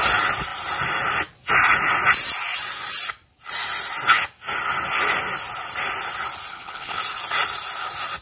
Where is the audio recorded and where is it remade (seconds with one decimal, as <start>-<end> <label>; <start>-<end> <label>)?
0.0-6.5 recorded; 6.5-7.0 remade; 7.0-8.2 recorded